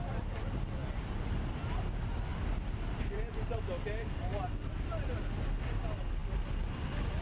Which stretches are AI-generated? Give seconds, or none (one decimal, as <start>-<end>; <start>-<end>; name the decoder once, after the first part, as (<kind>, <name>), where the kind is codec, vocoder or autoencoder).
none